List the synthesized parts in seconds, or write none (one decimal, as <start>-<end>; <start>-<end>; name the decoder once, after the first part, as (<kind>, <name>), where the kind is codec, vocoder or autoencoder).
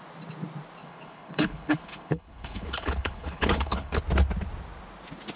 0.8-4.0 (codec, HILCodec)